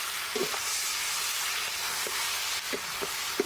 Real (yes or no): yes